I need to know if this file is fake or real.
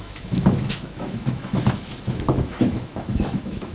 fake